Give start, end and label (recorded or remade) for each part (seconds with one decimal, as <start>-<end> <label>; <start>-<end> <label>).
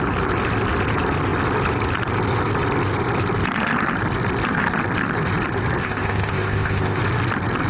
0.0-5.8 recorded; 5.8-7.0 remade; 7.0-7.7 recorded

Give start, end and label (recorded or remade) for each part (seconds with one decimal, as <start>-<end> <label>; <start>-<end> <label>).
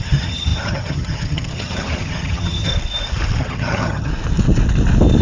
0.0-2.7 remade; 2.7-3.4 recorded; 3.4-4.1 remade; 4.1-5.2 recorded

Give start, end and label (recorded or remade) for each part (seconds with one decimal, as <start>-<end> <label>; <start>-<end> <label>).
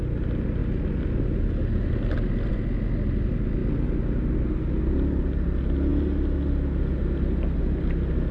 0.0-8.3 recorded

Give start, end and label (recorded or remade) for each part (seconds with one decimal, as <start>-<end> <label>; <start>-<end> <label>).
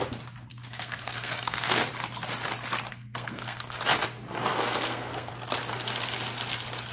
0.0-0.5 recorded; 0.5-1.9 remade; 1.9-2.9 recorded; 2.9-3.8 remade; 3.8-4.5 recorded; 4.5-5.3 remade; 5.3-6.9 recorded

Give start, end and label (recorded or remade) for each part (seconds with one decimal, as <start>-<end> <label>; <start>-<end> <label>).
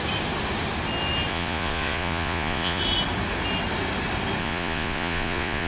0.0-1.3 recorded; 1.3-2.8 remade; 2.8-4.4 recorded; 4.4-5.7 remade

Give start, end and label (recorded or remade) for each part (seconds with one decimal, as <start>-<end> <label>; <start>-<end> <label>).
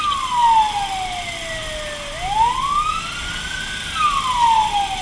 0.0-5.0 recorded